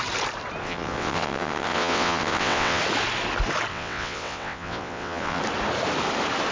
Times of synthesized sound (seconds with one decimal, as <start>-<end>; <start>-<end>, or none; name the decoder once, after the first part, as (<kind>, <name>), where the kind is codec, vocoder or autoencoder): 0.6-2.8 (vocoder, WaveNeXt); 3.7-5.4